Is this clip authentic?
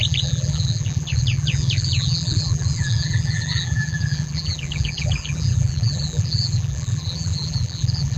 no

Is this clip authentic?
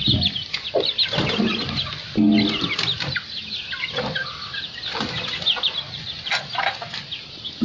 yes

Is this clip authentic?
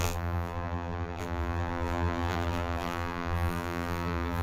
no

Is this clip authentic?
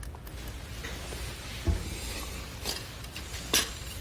yes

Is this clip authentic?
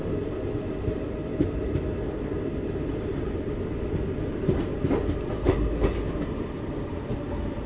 yes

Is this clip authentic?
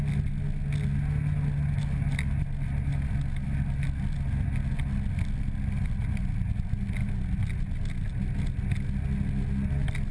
yes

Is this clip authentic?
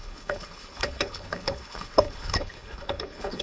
no